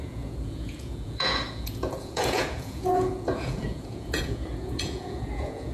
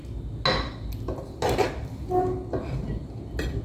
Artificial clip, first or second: first